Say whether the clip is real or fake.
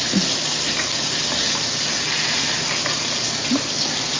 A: real